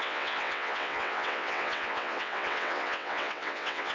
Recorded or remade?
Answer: remade